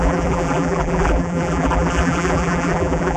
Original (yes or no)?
no